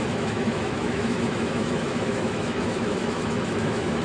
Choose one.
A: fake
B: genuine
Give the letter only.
A